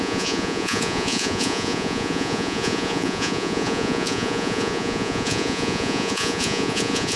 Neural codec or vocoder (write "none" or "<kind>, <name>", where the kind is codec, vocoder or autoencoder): vocoder, Vocos